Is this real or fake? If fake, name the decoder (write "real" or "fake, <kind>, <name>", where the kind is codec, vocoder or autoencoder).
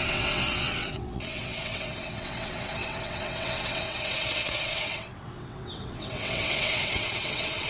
fake, vocoder, WaveNeXt